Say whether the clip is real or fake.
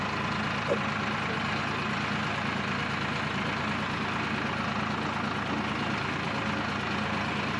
real